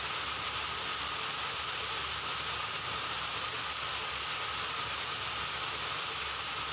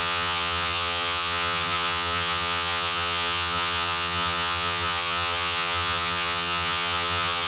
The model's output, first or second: second